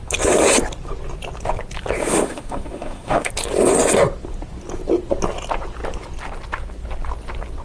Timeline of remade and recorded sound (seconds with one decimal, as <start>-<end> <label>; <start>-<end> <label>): 0.0-2.0 recorded; 2.0-3.3 remade; 3.3-7.6 recorded